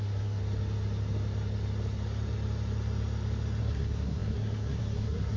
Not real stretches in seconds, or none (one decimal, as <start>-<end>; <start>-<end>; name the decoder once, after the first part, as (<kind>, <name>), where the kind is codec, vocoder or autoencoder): 0.0-0.4 (codec, SNAC); 3.6-5.4